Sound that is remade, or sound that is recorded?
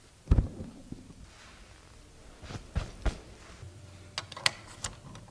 recorded